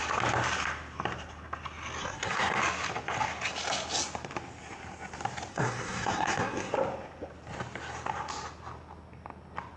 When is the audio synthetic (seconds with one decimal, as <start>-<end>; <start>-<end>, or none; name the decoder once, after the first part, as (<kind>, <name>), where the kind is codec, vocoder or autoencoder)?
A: 2.0-2.6 (codec, SNAC); 5.5-6.7